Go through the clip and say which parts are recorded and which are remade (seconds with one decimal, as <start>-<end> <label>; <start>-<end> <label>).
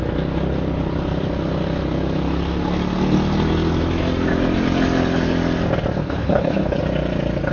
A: 0.0-6.0 recorded; 6.0-6.8 remade; 6.8-7.5 recorded